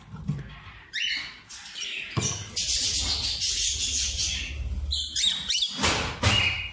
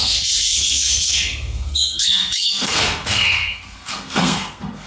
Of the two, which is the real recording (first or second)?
first